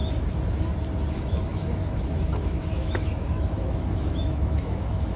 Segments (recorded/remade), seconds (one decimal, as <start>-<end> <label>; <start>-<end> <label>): 0.0-1.1 recorded; 1.1-5.2 remade